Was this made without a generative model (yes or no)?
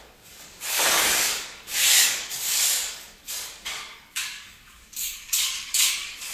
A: no